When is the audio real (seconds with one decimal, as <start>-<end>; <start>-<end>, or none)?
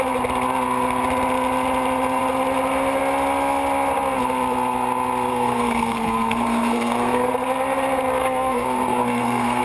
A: 0.0-5.3; 7.3-8.2